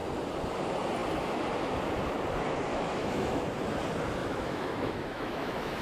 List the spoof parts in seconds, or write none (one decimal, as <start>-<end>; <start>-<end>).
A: 2.7-3.4; 4.2-5.8